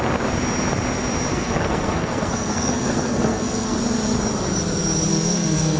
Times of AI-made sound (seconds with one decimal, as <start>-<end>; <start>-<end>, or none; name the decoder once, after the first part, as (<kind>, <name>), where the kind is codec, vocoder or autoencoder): 1.3-3.8 (codec, SNAC); 5.1-5.8